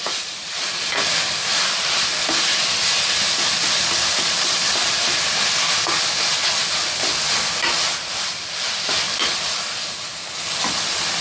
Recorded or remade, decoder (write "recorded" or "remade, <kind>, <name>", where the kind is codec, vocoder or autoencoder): recorded